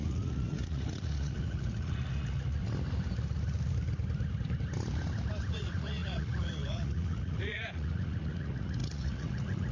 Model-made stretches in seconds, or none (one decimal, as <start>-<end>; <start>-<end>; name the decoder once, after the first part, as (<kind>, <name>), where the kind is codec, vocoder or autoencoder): 0.0-2.6 (vocoder, Vocos); 5.5-9.7